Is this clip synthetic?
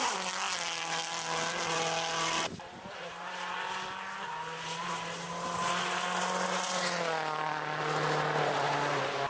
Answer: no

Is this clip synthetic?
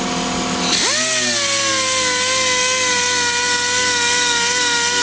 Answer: no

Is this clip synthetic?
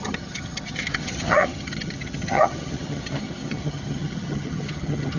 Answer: yes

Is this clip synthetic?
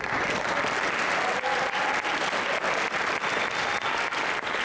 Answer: no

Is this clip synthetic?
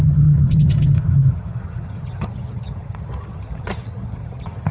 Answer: yes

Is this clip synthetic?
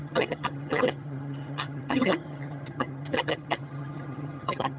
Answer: yes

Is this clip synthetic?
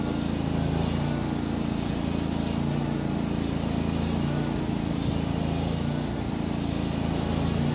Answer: no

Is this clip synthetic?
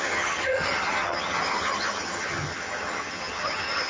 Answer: yes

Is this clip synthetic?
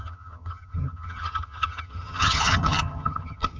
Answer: yes